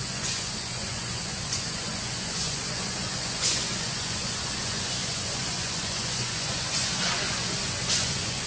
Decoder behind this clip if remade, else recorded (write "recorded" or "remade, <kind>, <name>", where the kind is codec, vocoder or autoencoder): remade, vocoder, Vocos